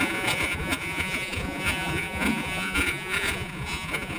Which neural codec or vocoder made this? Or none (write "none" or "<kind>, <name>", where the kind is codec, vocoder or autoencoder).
vocoder, Vocos